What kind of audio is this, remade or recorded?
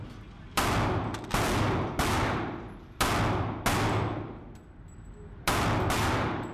recorded